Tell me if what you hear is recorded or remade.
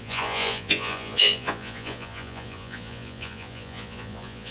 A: remade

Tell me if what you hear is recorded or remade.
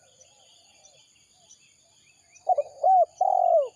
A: recorded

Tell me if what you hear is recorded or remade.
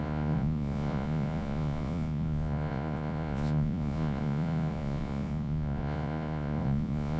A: remade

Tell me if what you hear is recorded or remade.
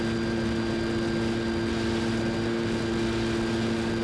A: recorded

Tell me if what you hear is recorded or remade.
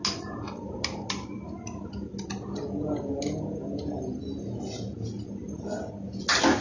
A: recorded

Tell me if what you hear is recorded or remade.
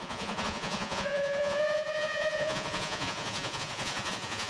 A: remade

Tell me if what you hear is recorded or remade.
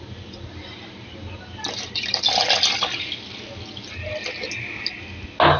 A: recorded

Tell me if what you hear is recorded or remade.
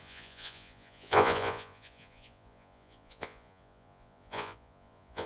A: remade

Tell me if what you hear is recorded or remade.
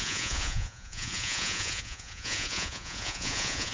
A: remade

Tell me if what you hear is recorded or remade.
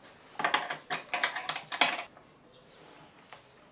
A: recorded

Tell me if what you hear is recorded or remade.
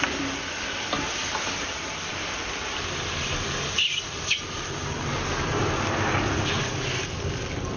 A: recorded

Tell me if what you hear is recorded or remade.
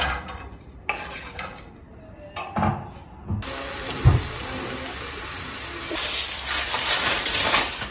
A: recorded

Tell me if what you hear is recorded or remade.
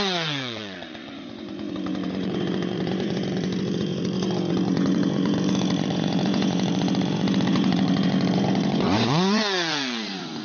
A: remade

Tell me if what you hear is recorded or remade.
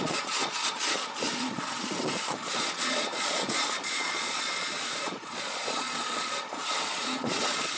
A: remade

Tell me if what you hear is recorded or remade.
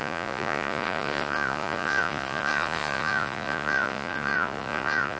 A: remade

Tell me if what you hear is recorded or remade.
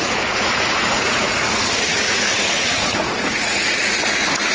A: remade